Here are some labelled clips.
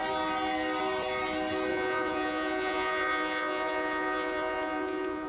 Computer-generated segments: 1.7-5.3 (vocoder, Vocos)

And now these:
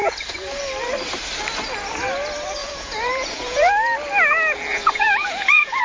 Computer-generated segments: 0.0-0.6 (vocoder, Vocos); 2.6-3.7; 4.7-5.8